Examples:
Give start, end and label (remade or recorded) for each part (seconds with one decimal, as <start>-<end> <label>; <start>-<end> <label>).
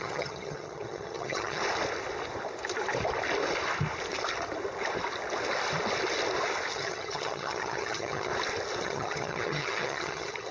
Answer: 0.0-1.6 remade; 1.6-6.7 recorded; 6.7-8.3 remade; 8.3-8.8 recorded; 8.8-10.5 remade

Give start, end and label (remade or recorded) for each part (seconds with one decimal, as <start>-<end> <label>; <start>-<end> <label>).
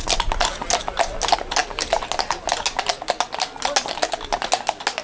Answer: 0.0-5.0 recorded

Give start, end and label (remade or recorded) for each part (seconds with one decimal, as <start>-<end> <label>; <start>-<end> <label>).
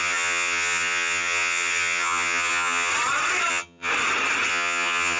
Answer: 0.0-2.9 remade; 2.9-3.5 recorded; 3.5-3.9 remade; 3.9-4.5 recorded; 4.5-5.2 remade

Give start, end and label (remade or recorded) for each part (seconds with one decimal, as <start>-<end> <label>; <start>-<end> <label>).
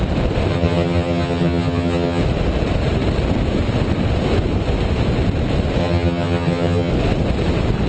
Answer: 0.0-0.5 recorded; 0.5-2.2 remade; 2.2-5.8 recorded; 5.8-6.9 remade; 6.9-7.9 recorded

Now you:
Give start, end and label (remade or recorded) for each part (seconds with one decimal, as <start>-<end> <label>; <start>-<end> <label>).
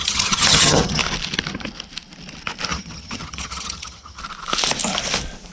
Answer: 0.0-1.0 remade; 1.0-2.7 recorded; 2.7-4.2 remade; 4.2-5.5 recorded